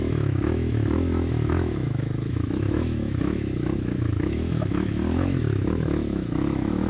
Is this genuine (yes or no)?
no